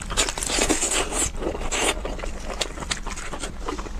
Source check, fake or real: real